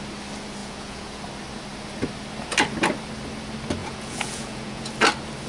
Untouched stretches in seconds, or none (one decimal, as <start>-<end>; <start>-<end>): 0.0-0.6; 1.2-3.8; 4.9-5.5